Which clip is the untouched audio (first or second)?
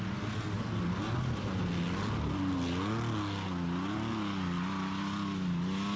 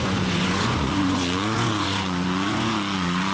first